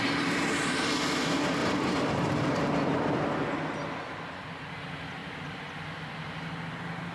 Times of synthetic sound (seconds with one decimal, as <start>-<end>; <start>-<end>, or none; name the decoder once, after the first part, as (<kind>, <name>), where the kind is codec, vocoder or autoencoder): 1.6-3.1 (vocoder, BigVGAN v2)

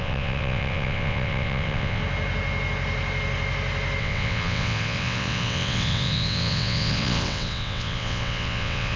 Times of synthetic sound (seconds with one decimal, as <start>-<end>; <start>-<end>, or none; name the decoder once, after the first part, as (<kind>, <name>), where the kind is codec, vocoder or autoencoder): 0.0-2.0 (vocoder, WaveNeXt); 4.0-9.0

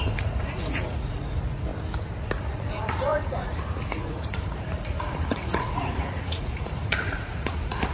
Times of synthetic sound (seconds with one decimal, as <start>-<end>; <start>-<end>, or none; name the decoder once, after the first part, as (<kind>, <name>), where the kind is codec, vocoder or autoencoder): 0.0-1.7 (vocoder, Vocos); 2.4-7.9

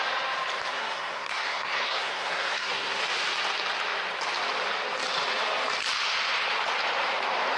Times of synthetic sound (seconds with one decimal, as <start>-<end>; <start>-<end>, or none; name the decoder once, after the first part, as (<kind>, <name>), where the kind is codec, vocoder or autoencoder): 0.7-3.0 (codec, SNAC)

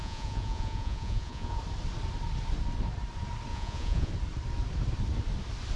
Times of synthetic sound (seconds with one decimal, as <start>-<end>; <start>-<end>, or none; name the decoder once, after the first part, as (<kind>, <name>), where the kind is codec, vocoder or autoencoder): 0.0-1.6 (vocoder, Vocos); 3.5-4.1

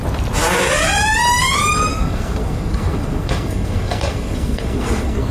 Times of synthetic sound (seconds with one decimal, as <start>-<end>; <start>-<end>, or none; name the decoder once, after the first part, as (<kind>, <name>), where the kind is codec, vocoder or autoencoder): 1.9-5.3 (codec, SNAC)

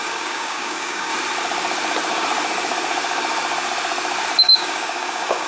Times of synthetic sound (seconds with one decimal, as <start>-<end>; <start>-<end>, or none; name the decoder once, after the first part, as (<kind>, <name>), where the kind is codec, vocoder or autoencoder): 0.0-1.1 (codec, DAC); 4.4-5.5